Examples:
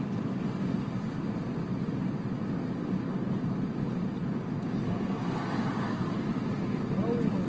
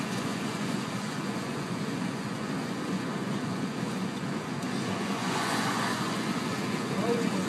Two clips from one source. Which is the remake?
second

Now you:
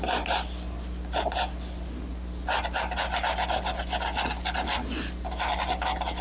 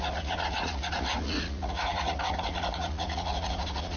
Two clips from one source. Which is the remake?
second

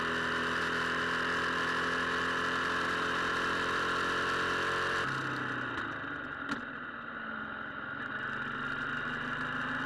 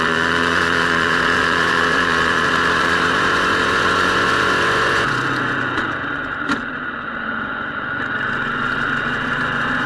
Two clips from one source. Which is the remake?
second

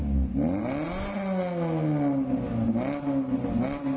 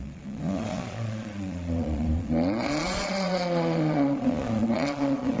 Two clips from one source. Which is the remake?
second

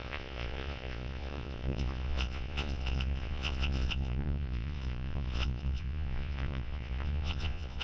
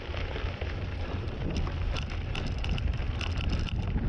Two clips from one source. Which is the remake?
first